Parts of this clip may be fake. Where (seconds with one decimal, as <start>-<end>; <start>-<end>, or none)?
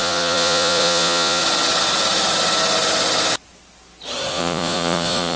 0.0-1.4; 4.3-5.4